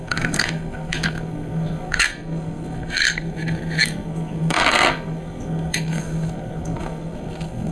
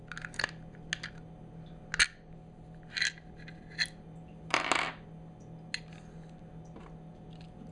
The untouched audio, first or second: second